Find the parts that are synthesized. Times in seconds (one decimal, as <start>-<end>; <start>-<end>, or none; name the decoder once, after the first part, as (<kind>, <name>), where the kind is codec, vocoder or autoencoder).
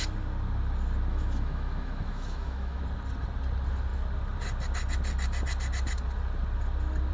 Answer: 1.1-2.8 (autoencoder, DAC-VAE)